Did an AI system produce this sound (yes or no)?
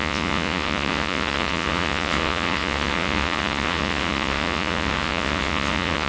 yes